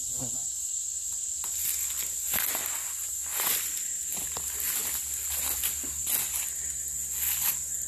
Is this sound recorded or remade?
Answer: recorded